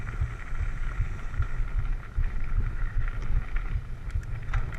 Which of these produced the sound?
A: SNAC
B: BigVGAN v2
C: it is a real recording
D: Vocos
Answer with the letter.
C